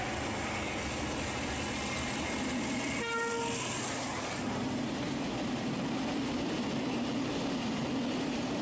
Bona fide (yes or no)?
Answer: yes